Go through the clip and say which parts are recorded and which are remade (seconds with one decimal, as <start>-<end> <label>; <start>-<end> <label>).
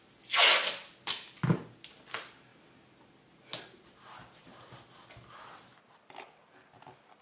0.0-7.2 recorded